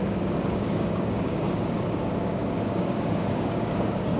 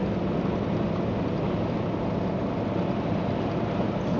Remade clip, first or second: first